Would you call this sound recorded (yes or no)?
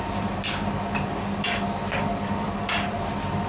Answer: yes